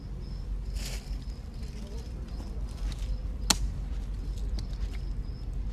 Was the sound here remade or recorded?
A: recorded